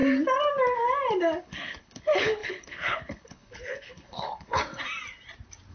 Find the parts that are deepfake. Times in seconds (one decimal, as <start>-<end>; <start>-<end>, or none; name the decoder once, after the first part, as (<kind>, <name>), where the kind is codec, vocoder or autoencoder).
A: 1.4-4.6 (codec, HILCodec)